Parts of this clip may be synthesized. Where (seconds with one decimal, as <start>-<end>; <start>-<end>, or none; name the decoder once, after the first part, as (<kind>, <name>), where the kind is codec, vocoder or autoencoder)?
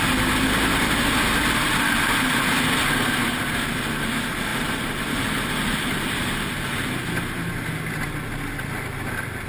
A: 4.5-6.3 (vocoder, BigVGAN v2)